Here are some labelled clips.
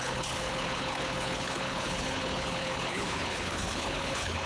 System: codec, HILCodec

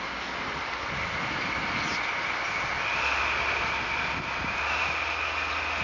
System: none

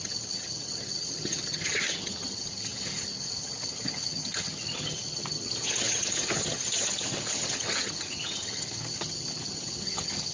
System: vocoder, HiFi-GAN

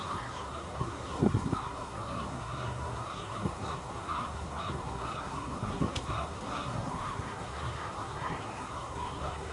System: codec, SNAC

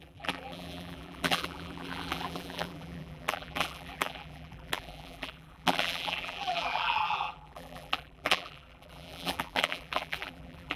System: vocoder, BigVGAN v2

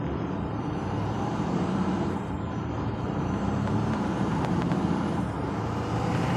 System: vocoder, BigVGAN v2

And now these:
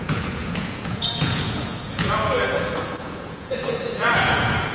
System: vocoder, Vocos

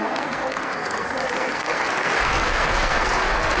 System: codec, SNAC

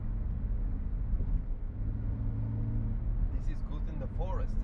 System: none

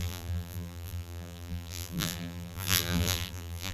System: vocoder, BigVGAN v2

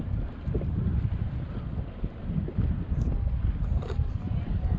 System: none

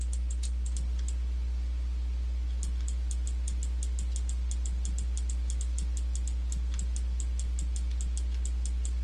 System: none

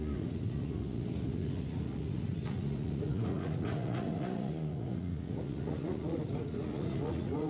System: vocoder, Vocos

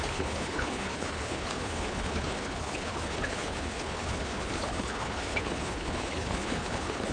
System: codec, HILCodec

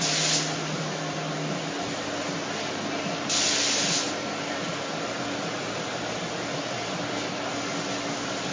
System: none